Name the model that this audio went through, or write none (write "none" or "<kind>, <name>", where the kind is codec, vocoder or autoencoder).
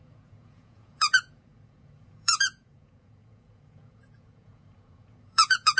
vocoder, Vocos